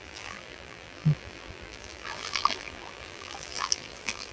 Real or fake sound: fake